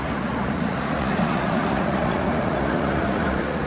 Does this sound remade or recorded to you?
remade